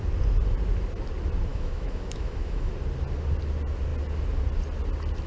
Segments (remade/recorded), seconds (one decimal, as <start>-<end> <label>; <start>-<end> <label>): 0.0-1.5 recorded; 1.5-2.7 remade; 2.7-5.3 recorded